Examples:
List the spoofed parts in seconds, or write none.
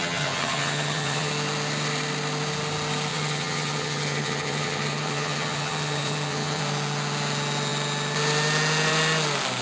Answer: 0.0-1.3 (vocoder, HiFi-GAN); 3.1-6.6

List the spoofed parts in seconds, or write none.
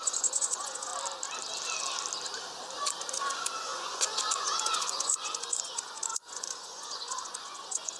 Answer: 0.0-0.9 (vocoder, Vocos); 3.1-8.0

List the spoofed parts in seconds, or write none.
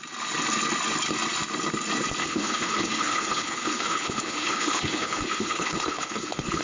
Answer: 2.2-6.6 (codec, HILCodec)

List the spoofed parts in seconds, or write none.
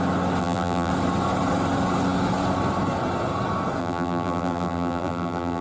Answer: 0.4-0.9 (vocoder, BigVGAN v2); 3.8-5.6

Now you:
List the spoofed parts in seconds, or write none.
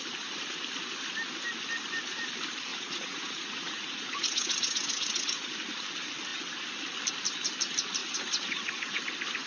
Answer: 2.7-5.5 (vocoder, Vocos); 8.0-9.0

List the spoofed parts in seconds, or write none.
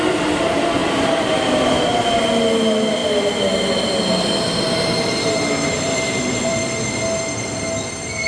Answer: 0.8-2.1 (vocoder, BigVGAN v2); 3.0-6.5